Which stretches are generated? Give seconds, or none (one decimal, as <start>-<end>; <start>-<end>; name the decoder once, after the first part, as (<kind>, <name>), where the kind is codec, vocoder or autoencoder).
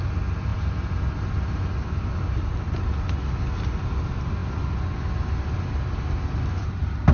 none